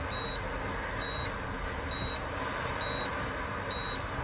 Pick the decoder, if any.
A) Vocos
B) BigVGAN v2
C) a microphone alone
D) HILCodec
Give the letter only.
C